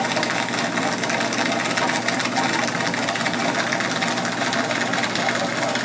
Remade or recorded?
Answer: recorded